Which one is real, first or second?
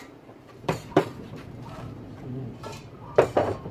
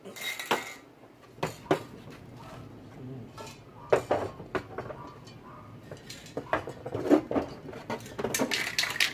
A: second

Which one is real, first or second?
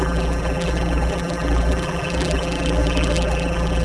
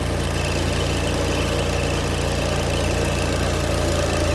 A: second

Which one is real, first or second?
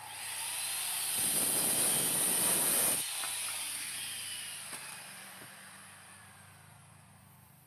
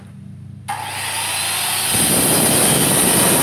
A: second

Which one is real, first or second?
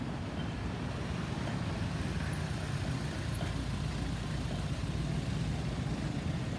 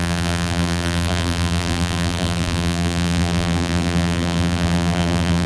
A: first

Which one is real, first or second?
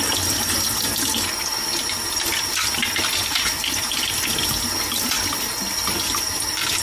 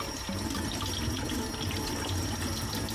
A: first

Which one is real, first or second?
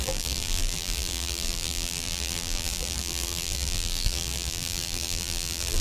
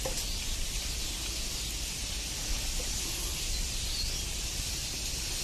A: second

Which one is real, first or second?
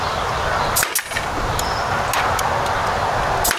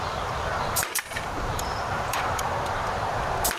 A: first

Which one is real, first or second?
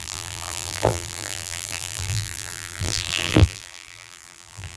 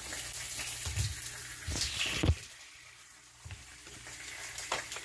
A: second